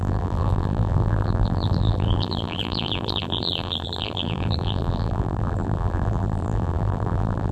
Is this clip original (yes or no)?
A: no